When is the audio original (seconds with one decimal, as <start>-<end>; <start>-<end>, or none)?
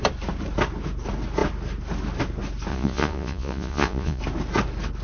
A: 0.0-2.7; 4.2-5.0